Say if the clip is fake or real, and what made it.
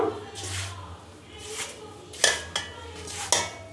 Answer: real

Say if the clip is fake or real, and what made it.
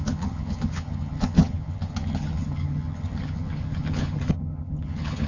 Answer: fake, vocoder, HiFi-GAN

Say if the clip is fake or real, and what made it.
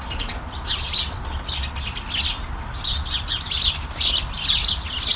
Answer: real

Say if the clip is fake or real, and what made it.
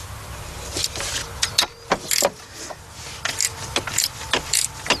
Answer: real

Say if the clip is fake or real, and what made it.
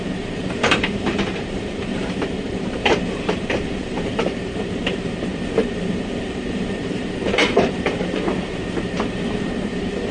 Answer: fake, vocoder, BigVGAN v2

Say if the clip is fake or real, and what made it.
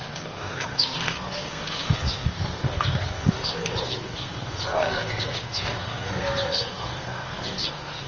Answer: fake, codec, SNAC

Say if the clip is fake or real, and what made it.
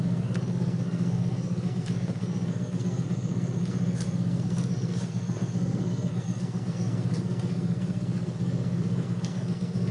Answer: fake, codec, SNAC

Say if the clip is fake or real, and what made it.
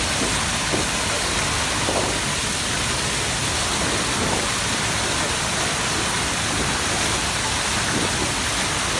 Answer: real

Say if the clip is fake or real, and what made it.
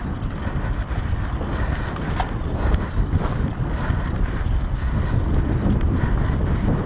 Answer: real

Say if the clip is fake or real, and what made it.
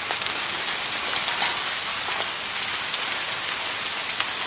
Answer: real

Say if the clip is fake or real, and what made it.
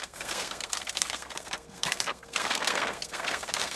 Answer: fake, codec, SNAC